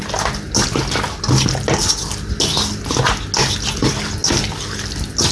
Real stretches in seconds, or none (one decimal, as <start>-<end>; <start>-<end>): 0.0-5.3